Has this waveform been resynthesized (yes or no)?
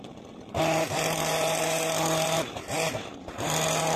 no